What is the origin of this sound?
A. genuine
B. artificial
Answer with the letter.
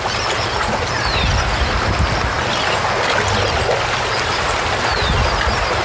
A